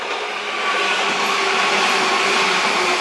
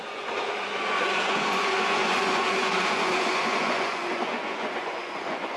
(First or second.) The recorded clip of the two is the first